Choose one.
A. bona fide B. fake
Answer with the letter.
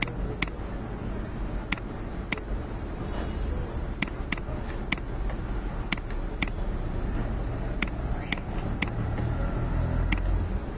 A